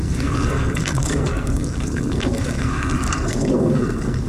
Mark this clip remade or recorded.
remade